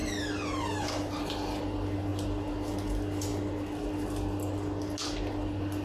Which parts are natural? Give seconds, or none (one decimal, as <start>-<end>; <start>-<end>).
0.0-5.8